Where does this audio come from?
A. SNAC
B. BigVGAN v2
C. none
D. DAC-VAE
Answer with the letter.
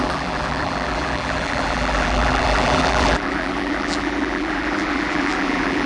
B